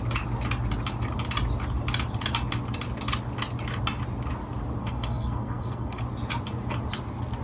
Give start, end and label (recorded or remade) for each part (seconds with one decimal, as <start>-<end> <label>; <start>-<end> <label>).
0.0-4.8 recorded; 4.8-6.0 remade; 6.0-7.4 recorded